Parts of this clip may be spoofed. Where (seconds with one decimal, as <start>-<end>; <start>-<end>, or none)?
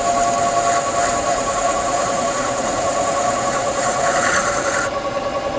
1.3-4.7